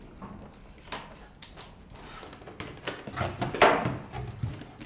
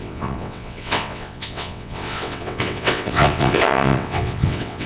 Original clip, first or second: first